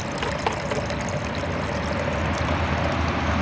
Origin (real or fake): real